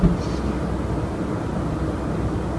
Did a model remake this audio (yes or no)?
no